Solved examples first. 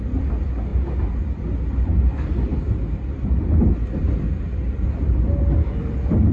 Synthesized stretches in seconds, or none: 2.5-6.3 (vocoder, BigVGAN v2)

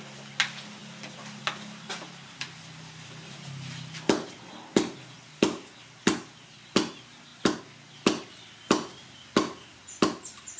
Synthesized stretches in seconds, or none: none

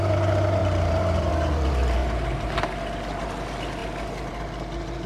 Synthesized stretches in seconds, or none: 0.6-1.3 (vocoder, BigVGAN v2); 2.0-2.5

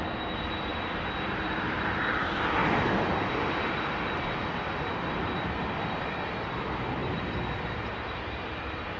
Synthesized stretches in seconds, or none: 0.0-9.0 (vocoder, BigVGAN v2)

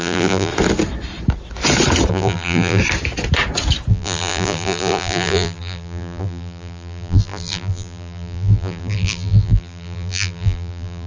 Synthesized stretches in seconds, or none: 0.0-0.5 (vocoder, BigVGAN v2); 2.1-2.8; 3.9-11.1

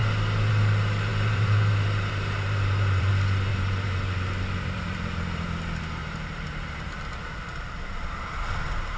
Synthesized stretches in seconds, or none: 1.1-3.1 (vocoder, BigVGAN v2); 3.5-5.5; 6.0-8.3

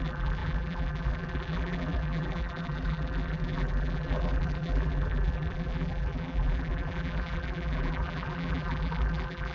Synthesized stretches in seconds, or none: 0.0-9.5 (vocoder, BigVGAN v2)

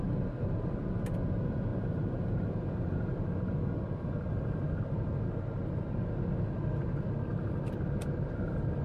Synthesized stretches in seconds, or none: 1.7-4.8 (vocoder, BigVGAN v2)